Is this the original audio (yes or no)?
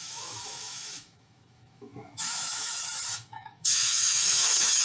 no